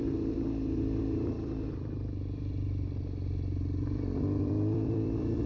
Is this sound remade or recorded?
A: remade